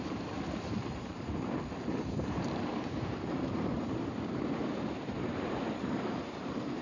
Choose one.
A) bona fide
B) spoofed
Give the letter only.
B